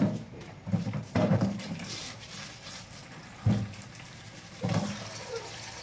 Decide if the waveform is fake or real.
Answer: fake